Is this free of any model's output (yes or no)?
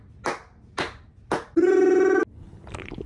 yes